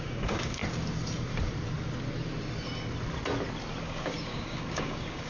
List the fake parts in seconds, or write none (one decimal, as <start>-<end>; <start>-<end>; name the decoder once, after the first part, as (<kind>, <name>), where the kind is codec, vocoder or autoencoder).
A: 0.0-0.6 (codec, DAC); 3.8-5.3